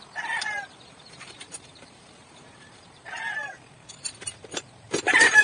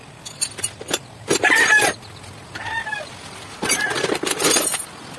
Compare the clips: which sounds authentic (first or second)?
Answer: second